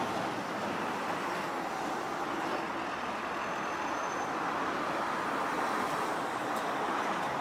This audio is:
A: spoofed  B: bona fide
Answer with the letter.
B